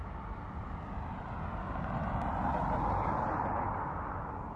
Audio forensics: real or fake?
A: real